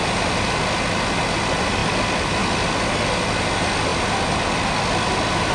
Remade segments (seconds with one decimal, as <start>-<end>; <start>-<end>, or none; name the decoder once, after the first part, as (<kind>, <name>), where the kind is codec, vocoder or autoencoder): none